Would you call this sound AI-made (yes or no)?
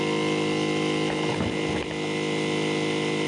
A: no